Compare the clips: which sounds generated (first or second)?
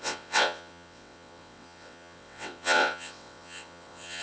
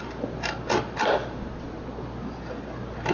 first